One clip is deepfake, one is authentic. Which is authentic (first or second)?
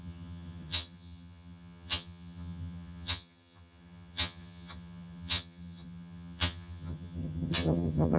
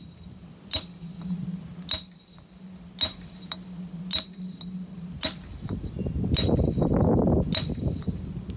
second